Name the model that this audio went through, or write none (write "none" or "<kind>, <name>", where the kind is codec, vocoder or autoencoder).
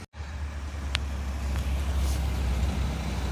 none